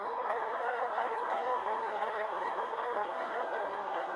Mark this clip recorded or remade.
remade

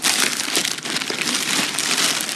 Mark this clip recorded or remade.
recorded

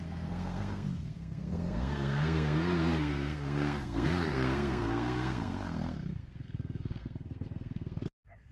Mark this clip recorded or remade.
remade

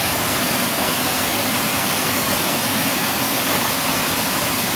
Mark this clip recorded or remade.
remade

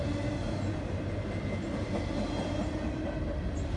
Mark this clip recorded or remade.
recorded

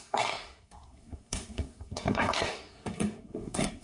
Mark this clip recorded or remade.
remade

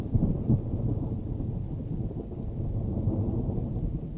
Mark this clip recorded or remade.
recorded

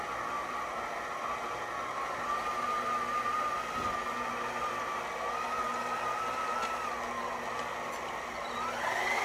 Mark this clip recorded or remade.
recorded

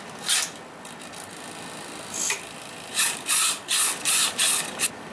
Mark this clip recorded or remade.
recorded